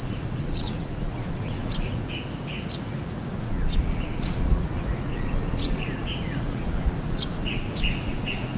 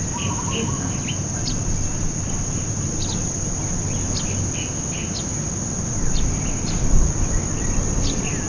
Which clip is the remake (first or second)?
first